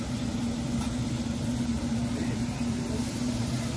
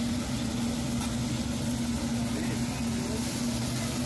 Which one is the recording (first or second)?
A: second